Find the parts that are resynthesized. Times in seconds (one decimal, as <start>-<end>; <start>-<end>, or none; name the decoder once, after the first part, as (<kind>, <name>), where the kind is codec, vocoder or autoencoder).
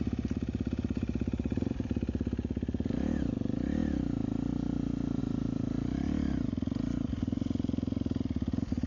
none